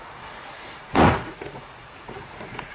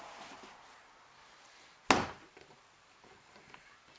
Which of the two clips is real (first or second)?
second